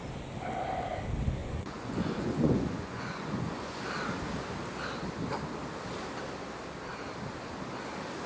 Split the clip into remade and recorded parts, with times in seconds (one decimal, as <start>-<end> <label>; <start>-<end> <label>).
0.0-1.4 recorded; 1.4-3.8 remade; 3.8-8.3 recorded